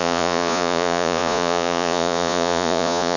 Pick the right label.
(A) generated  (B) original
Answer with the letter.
A